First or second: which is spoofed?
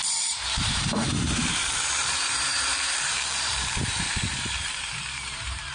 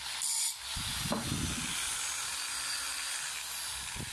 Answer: first